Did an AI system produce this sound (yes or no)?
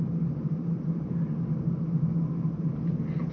no